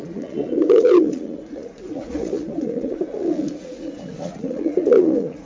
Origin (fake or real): fake